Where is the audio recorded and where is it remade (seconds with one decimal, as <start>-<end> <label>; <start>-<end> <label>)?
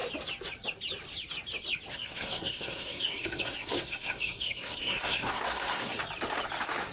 0.0-1.9 recorded; 1.9-6.0 remade; 6.0-6.9 recorded